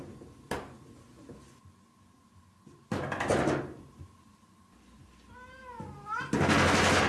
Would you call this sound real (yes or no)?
yes